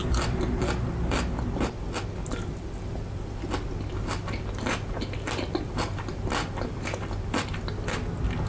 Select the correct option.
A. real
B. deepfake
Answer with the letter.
A